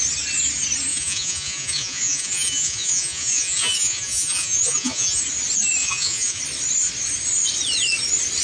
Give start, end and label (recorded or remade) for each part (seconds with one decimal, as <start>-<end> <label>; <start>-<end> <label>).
0.0-0.9 recorded; 0.9-5.2 remade; 5.2-5.8 recorded; 5.8-6.4 remade; 6.4-8.4 recorded